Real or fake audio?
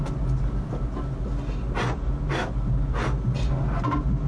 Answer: real